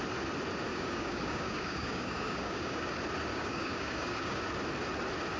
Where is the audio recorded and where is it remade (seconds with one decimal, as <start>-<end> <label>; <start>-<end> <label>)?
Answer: 0.0-0.7 recorded; 0.7-2.9 remade; 2.9-3.3 recorded; 3.3-4.4 remade; 4.4-5.4 recorded